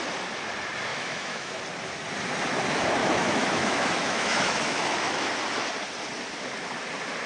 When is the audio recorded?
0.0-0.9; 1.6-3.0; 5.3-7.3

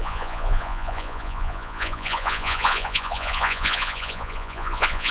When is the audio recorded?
none

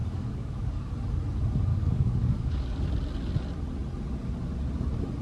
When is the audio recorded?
0.9-1.7; 2.9-5.2